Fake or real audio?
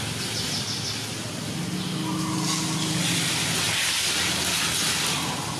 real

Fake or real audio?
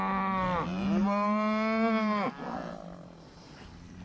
real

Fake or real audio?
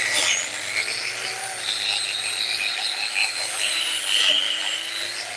real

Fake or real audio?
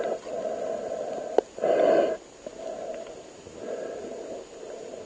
real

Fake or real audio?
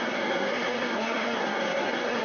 fake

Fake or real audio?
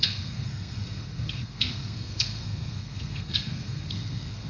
fake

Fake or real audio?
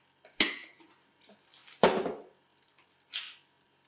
real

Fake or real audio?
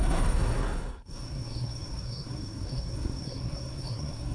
fake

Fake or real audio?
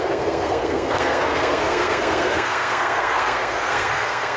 fake